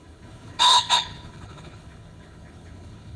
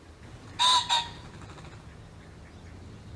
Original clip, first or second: second